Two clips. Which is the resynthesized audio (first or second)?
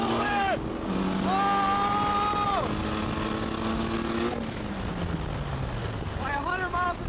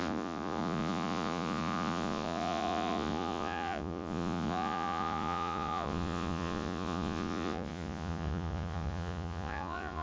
second